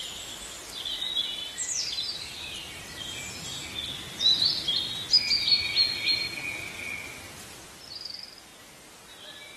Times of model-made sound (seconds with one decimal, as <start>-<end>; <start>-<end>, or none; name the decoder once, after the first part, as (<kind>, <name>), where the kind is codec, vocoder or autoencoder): none